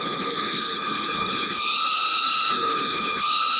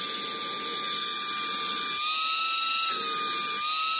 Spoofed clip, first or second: first